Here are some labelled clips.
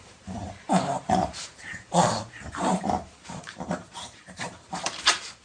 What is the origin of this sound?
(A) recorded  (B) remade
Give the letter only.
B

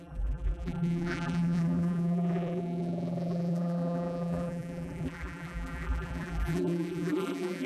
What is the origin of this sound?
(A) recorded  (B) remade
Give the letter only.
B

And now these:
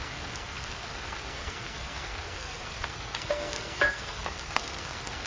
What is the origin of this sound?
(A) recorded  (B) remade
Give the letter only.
B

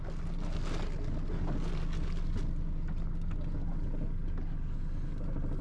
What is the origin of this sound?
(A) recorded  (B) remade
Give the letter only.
A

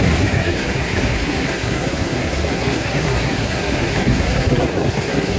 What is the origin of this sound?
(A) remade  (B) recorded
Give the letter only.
A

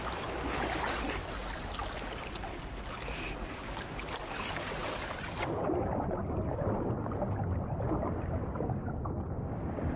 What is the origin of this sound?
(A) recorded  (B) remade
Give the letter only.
A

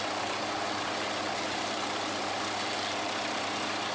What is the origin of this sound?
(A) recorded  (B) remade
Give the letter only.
A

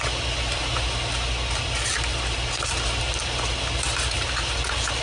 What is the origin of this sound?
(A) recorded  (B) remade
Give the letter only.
A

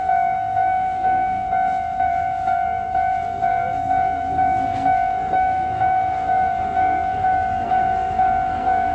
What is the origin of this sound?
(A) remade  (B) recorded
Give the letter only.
A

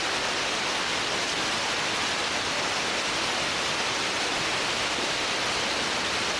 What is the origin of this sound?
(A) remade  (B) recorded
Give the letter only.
B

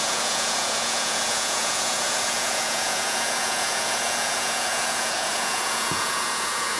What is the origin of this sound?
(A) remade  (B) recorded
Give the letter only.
A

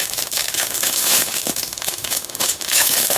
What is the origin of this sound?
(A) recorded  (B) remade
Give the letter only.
B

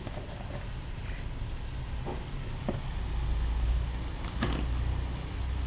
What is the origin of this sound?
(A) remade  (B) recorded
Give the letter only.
B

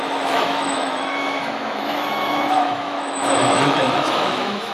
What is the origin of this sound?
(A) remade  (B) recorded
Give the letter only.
A